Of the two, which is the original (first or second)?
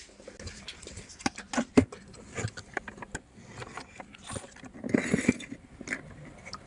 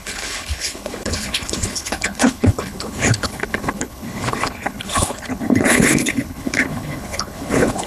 first